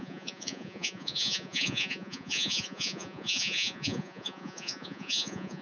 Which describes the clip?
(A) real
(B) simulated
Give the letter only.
B